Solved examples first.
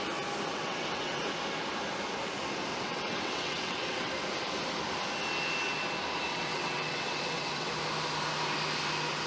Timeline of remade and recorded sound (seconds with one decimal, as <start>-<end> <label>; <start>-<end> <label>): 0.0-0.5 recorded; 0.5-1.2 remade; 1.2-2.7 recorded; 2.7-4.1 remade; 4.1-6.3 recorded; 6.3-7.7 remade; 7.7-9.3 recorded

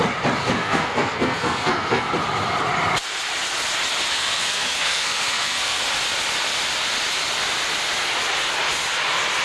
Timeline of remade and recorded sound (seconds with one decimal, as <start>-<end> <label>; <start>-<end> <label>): 0.0-0.6 recorded; 0.6-2.1 remade; 2.1-4.1 recorded; 4.1-5.8 remade; 5.8-9.4 recorded

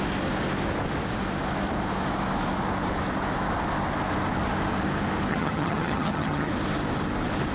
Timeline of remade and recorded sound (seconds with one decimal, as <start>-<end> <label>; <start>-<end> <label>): 0.0-5.3 recorded; 5.3-6.5 remade; 6.5-7.5 recorded